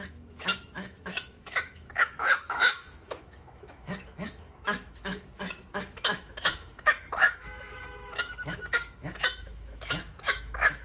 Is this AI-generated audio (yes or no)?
yes